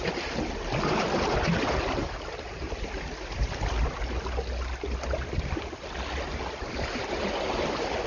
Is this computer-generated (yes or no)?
no